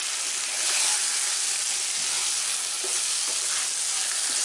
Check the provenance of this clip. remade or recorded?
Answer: recorded